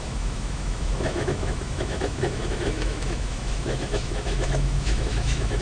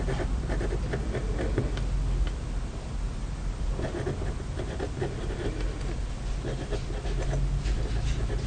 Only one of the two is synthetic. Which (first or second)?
first